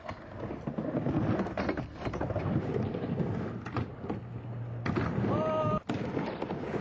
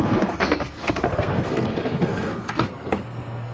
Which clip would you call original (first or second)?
first